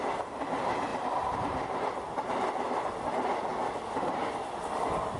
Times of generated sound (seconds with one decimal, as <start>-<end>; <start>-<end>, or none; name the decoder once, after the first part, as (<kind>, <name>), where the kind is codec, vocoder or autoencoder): none